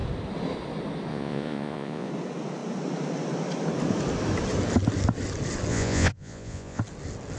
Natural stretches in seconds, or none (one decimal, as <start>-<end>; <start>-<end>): 0.0-1.1; 2.1-5.7; 6.8-7.4